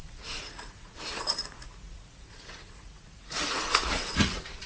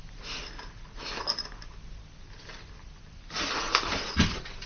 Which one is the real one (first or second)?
second